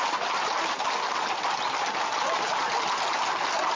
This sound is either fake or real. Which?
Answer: real